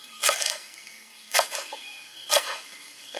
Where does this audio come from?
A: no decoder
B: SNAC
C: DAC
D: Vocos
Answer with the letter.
B